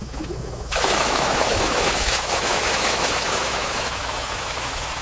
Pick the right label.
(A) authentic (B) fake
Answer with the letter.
B